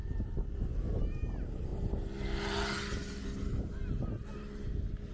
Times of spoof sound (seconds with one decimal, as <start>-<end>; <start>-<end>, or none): 0.0-1.7